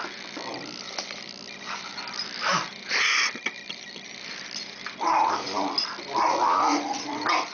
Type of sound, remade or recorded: recorded